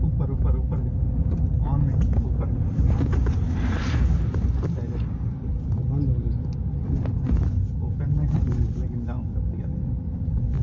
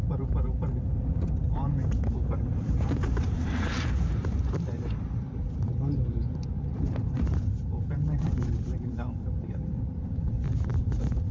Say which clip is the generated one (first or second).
second